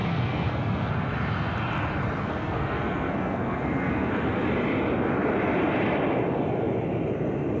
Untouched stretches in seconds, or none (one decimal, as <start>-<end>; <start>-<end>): 0.9-2.2; 4.1-7.6